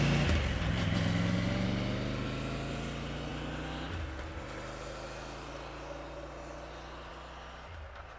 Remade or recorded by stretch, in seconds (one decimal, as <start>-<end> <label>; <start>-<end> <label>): 0.0-8.2 recorded